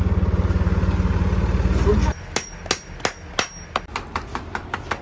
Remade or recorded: recorded